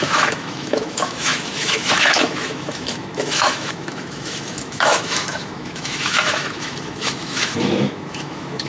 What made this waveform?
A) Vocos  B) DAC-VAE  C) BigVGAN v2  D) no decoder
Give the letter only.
B